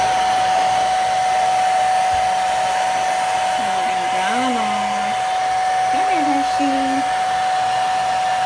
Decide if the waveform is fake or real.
real